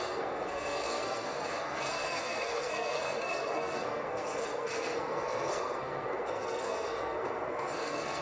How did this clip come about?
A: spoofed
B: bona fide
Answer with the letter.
A